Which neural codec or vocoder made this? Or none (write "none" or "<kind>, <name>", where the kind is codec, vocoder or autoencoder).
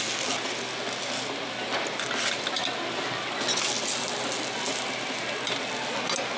none